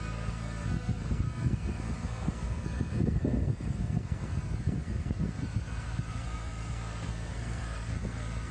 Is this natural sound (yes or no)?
no